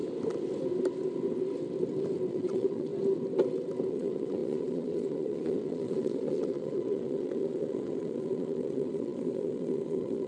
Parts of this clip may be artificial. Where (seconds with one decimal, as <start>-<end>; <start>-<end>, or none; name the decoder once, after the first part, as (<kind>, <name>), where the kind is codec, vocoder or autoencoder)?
2.3-2.9 (vocoder, Vocos); 3.9-10.3